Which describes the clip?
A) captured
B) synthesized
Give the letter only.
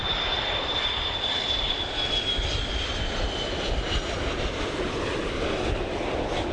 A